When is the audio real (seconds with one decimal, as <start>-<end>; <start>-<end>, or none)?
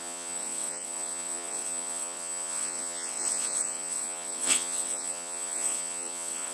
none